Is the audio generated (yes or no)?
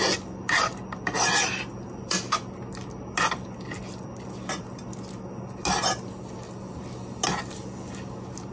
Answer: no